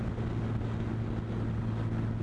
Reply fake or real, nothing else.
real